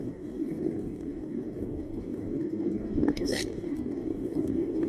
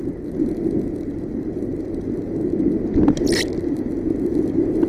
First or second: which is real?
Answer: second